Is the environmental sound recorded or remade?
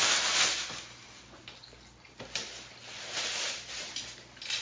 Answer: recorded